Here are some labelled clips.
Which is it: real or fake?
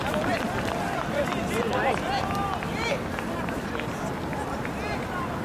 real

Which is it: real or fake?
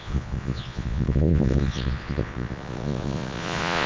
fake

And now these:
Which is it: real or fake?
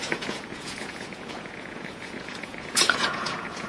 fake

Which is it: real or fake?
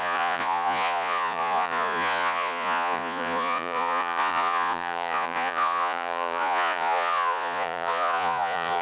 fake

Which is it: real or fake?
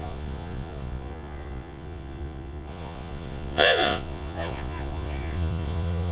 fake